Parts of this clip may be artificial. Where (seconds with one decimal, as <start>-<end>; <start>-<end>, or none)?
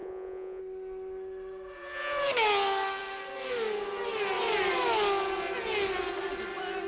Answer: 0.0-0.6